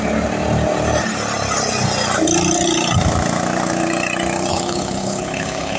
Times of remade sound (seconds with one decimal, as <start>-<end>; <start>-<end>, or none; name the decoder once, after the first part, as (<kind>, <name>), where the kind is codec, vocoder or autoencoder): 4.5-5.8 (codec, HILCodec)